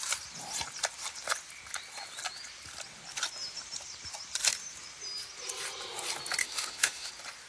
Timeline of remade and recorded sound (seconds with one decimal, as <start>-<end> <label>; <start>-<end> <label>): 0.0-6.4 recorded; 6.4-7.1 remade; 7.1-7.5 recorded